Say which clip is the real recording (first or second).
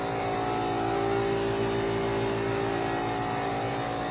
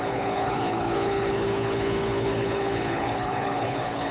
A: first